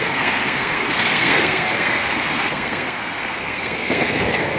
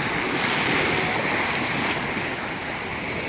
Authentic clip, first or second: second